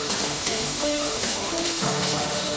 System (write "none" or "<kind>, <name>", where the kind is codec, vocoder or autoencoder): autoencoder, DAC-VAE